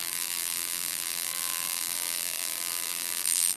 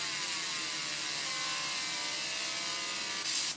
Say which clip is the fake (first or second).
first